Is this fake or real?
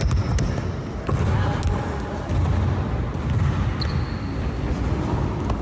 real